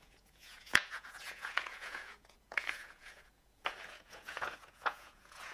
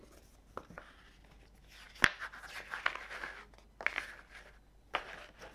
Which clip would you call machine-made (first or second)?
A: first